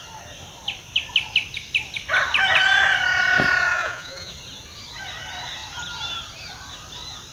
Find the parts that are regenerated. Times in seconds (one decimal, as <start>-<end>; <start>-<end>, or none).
3.7-4.3